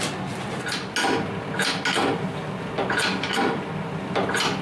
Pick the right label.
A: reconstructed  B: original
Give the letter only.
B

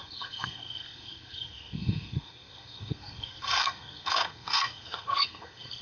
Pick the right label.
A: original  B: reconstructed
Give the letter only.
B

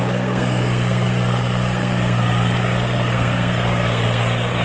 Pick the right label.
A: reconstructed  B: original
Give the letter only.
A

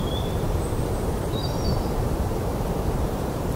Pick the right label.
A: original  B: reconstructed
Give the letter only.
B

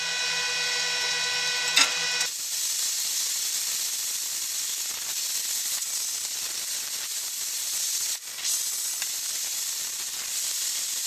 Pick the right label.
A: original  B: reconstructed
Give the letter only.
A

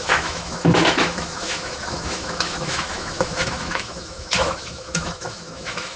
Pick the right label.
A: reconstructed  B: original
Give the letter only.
A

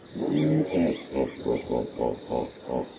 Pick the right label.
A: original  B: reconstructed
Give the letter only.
A